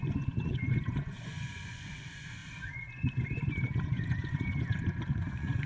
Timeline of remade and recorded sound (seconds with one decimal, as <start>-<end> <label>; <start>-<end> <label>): 0.0-5.7 remade